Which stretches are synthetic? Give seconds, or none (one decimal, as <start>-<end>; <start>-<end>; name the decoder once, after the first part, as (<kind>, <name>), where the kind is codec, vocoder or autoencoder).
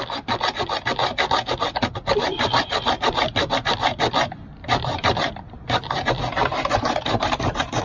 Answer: 4.6-6.1 (vocoder, BigVGAN v2); 6.5-7.8